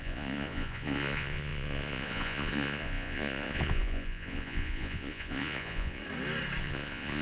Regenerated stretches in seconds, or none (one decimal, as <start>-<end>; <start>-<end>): 0.0-6.0; 6.6-7.2